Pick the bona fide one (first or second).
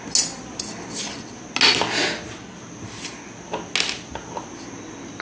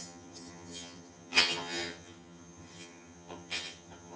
first